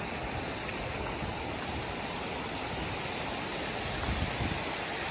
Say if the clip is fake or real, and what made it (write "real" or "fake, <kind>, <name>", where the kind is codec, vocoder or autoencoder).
real